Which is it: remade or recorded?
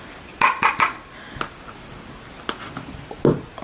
recorded